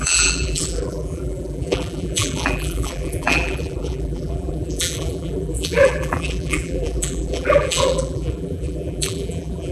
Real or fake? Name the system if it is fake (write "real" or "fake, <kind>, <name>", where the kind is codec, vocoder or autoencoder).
fake, vocoder, BigVGAN v2